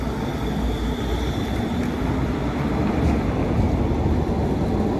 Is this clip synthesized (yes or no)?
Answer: no